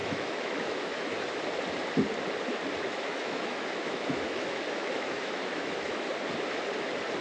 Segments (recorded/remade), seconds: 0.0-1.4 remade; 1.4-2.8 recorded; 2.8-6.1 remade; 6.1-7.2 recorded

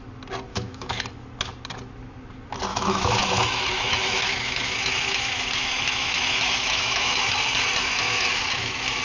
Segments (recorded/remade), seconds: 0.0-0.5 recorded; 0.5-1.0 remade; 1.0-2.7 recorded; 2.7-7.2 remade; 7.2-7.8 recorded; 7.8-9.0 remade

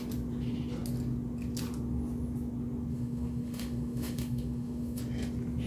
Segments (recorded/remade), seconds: 0.0-2.9 recorded; 2.9-5.0 remade; 5.0-5.7 recorded

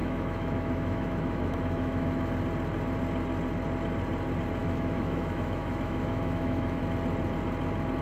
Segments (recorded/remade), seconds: 0.0-2.3 remade; 2.3-4.6 recorded; 4.6-6.8 remade; 6.8-8.0 recorded

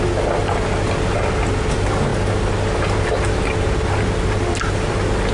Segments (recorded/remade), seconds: 0.0-5.3 recorded

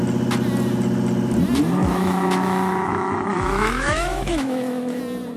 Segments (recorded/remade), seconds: 0.0-1.8 recorded; 1.8-5.0 remade; 5.0-5.4 recorded

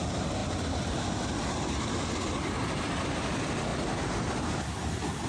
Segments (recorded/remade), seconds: 0.0-5.3 recorded

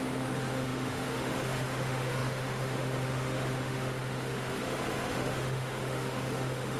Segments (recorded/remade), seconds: 0.0-6.8 remade